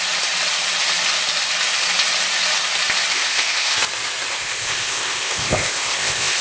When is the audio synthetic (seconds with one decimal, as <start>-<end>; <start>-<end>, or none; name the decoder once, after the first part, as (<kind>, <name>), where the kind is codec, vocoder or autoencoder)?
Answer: 3.1-3.8 (codec, ZipCodec); 4.3-6.4